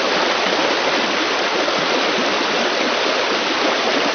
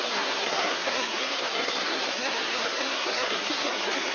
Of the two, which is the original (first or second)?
first